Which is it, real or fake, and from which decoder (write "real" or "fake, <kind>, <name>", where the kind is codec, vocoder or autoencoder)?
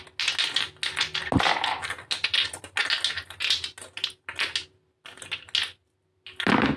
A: real